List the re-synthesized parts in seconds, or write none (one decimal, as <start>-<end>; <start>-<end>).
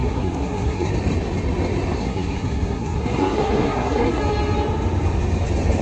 0.0-0.9; 2.0-4.2